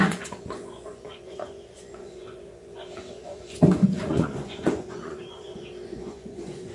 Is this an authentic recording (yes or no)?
no